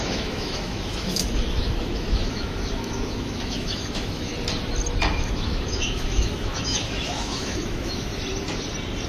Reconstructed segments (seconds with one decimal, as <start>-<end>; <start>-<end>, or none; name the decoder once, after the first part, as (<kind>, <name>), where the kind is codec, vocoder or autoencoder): 0.0-4.3 (autoencoder, DAC-VAE); 5.1-8.1